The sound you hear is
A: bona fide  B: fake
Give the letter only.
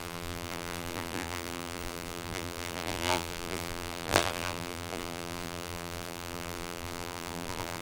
B